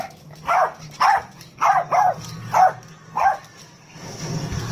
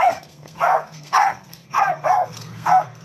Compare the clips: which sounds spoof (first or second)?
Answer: second